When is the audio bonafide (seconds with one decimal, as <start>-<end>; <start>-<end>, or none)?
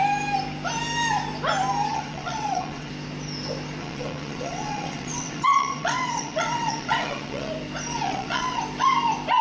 0.0-1.9; 2.9-3.8; 7.5-7.9; 8.6-9.4